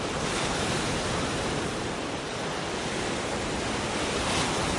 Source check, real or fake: real